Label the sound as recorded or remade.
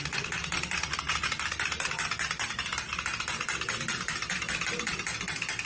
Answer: recorded